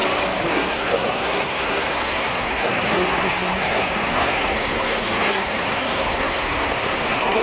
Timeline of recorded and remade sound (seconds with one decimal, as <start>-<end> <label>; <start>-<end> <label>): 0.0-0.5 recorded; 0.5-7.4 remade